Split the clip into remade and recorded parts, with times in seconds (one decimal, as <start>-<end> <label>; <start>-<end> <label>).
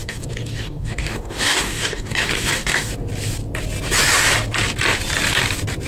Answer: 0.0-2.9 remade; 2.9-5.9 recorded